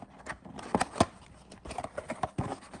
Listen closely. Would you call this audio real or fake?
real